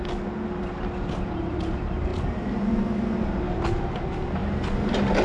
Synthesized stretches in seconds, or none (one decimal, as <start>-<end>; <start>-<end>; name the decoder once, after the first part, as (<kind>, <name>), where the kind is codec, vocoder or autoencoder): none